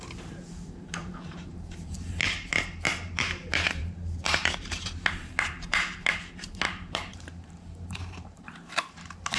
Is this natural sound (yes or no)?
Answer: no